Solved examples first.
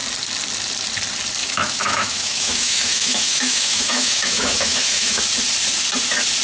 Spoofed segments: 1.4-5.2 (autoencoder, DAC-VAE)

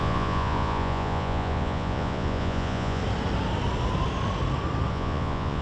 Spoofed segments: 0.0-3.0 (vocoder, Vocos); 4.9-5.6